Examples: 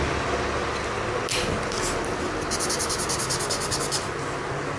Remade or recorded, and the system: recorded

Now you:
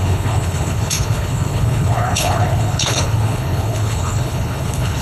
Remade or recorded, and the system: remade, codec, HILCodec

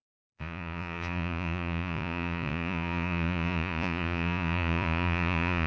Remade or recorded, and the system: remade, vocoder, Vocos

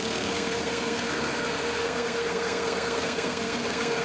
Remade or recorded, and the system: remade, codec, SNAC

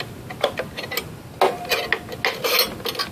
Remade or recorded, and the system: recorded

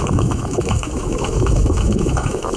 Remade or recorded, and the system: remade, autoencoder, DAC-VAE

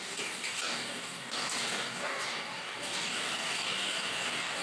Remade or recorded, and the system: remade, codec, DAC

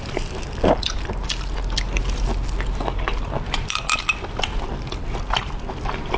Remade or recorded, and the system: recorded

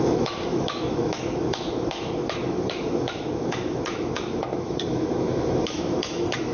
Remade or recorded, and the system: remade, autoencoder, DAC-VAE